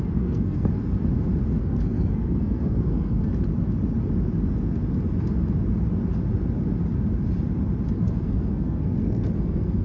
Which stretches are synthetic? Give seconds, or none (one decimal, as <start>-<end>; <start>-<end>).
0.0-0.7; 1.6-3.3; 7.9-9.8